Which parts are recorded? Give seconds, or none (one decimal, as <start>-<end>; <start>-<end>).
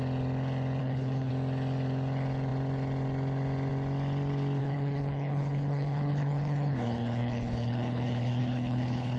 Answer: 0.0-0.8; 1.3-4.6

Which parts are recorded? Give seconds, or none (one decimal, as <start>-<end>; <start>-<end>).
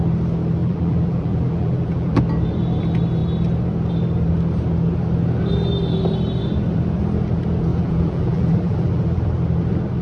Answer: 0.0-0.6; 2.2-7.7; 9.2-10.0